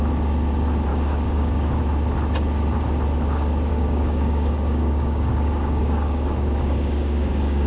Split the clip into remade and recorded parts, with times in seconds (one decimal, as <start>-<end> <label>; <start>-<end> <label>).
0.0-0.9 recorded; 0.9-1.8 remade; 1.8-3.7 recorded; 3.7-7.7 remade